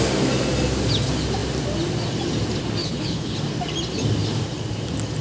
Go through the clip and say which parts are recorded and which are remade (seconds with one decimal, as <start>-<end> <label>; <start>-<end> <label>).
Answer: 0.0-2.8 recorded; 2.8-3.4 remade; 3.4-5.2 recorded